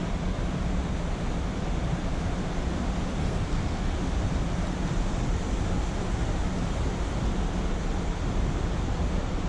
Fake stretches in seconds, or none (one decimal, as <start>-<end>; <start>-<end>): 3.2-3.8